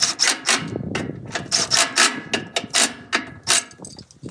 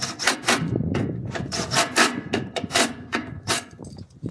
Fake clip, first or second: second